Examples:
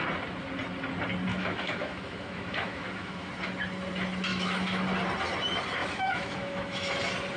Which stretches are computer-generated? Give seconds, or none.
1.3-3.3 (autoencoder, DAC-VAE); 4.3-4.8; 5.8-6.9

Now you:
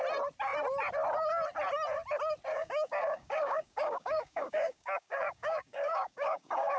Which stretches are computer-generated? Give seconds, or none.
2.5-6.8 (codec, DAC)

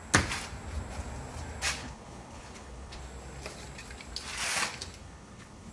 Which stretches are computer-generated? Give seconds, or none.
1.8-3.0 (codec, HILCodec); 5.0-5.7

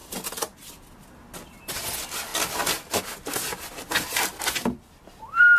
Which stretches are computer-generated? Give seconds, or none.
none

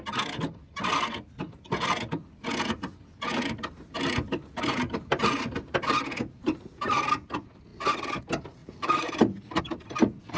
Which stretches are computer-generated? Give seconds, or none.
3.3-7.0 (vocoder, BigVGAN v2); 8.6-9.6

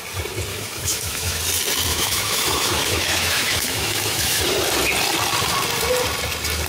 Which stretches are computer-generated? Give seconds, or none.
0.5-1.4 (autoencoder, DAC-VAE); 1.9-4.4

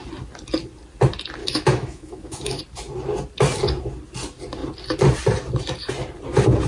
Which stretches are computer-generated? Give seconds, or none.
1.4-2.6 (autoencoder, DAC-VAE)

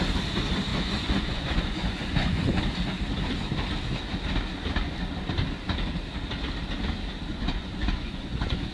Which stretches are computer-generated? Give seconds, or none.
0.7-2.6 (vocoder, Vocos); 7.3-8.7